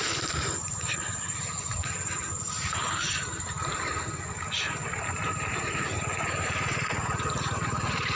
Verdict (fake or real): fake